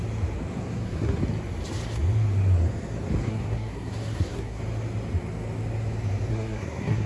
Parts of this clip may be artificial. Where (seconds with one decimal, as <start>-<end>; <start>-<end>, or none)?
0.5-1.2; 3.2-4.6; 6.3-7.1